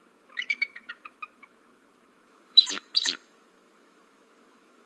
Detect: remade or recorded remade